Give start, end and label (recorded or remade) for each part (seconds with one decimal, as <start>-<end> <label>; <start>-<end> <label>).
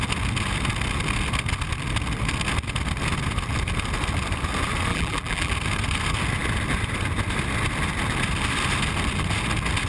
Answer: 0.0-4.9 recorded; 4.9-5.5 remade; 5.5-9.9 recorded